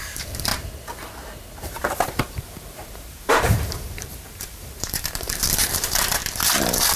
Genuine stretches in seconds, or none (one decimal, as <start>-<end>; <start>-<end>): 0.5-1.7; 6.2-7.0